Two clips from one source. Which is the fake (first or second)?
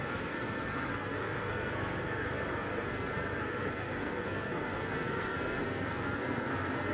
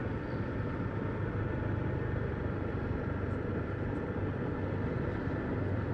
first